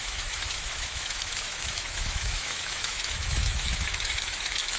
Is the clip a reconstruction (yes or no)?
yes